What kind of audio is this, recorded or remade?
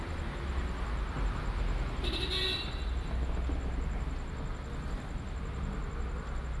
recorded